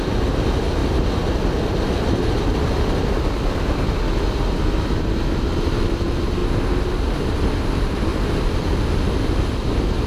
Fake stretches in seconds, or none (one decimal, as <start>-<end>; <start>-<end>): 0.8-3.0; 8.1-8.6